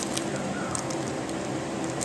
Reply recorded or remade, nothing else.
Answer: remade